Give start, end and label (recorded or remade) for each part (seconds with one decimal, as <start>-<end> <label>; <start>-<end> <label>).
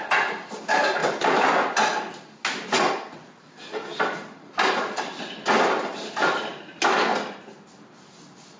0.0-8.6 recorded